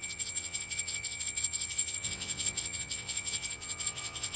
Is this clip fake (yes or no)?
yes